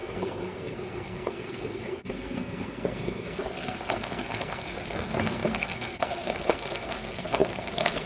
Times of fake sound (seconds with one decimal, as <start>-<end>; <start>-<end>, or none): 0.0-8.1